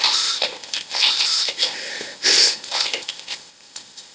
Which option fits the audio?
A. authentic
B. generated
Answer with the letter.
B